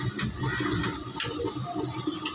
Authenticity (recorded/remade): recorded